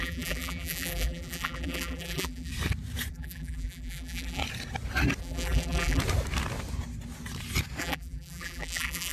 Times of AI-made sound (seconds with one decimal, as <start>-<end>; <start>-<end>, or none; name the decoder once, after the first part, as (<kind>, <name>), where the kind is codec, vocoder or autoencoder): 0.0-2.5 (vocoder, BigVGAN v2); 3.1-4.4; 5.2-6.0; 7.8-9.1